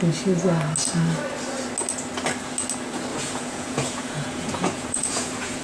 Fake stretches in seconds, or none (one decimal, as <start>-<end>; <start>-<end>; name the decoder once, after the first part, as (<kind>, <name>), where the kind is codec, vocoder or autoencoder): 3.1-5.6 (vocoder, Vocos)